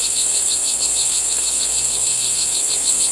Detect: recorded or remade remade